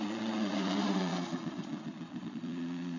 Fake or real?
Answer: fake